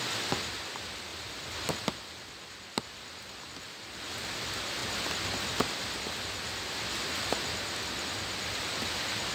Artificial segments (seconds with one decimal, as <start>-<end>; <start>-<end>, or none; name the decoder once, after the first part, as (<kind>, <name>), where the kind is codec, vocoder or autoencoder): none